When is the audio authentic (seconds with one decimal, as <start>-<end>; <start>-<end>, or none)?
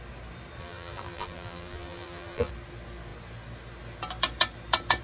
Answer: 0.0-0.6; 2.5-5.0